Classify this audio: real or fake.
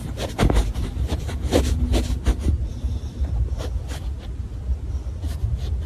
real